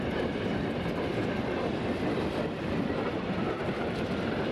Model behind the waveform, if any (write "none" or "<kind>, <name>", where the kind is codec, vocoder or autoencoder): vocoder, BigVGAN v2